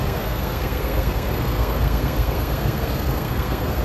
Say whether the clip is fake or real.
fake